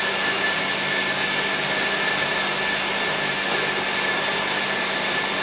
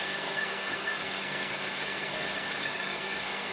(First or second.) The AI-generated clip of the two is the second